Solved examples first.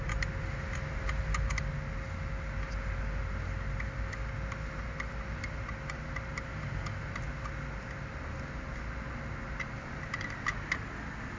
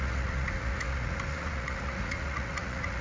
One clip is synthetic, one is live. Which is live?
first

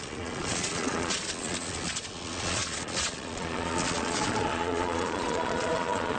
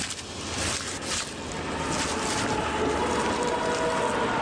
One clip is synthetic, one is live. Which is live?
second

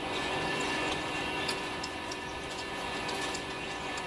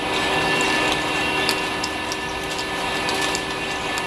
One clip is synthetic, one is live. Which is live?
second